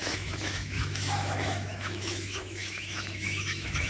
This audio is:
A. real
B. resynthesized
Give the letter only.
B